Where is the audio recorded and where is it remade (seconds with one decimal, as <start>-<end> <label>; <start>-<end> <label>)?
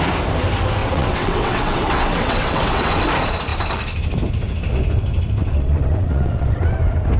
0.0-0.8 recorded; 0.8-2.9 remade; 2.9-5.4 recorded; 5.4-6.6 remade; 6.6-7.2 recorded